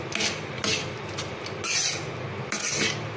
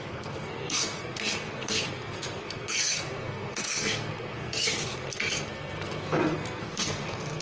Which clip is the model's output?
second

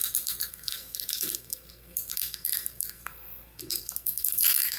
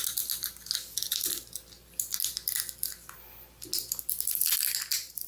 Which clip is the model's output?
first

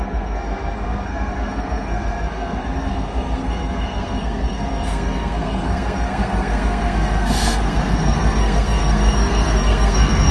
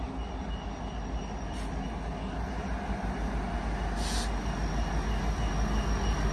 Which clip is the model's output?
first